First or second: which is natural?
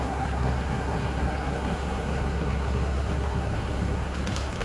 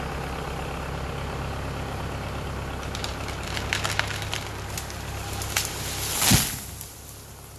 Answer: second